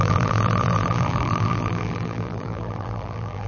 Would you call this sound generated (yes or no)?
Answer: yes